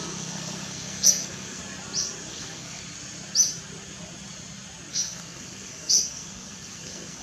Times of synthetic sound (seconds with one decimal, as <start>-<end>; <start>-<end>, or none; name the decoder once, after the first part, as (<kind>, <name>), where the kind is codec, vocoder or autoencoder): 0.0-1.6 (codec, SNAC); 2.3-2.8; 4.9-7.2